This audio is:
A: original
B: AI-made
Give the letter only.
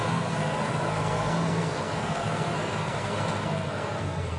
B